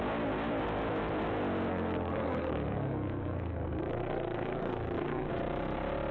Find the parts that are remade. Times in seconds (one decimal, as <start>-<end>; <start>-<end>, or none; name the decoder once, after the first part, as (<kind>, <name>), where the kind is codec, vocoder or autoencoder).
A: 1.7-5.3 (codec, SNAC)